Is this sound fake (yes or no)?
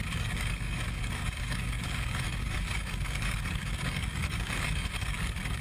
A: yes